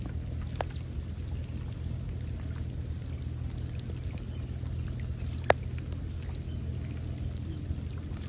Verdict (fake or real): real